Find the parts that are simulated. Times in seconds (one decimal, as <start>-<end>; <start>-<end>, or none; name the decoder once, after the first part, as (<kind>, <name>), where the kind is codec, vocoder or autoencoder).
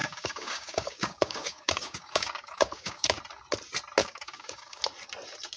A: 0.0-3.2 (codec, DAC); 4.0-4.8